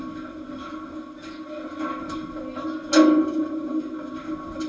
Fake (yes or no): no